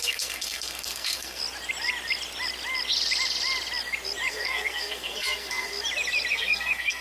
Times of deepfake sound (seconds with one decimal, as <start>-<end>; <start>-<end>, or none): 0.0-1.4; 4.3-5.7; 6.3-7.0